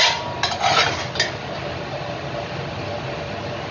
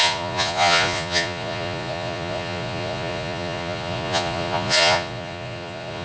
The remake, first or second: second